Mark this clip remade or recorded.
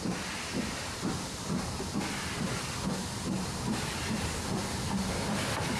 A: recorded